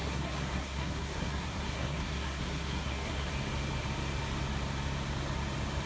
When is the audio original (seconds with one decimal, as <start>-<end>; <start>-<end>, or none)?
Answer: 3.3-5.9